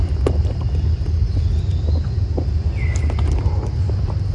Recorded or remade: recorded